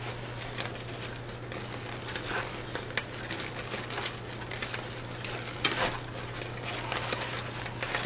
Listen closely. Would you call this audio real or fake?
real